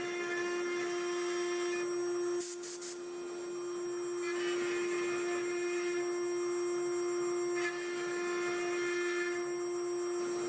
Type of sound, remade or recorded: recorded